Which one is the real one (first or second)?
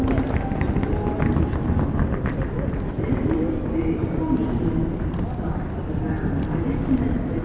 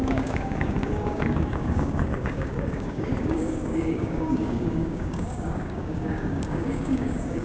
first